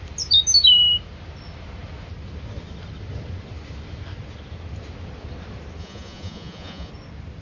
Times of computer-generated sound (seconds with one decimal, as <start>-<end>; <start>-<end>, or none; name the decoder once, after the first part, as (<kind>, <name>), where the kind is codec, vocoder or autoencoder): 5.8-6.9 (vocoder, Vocos)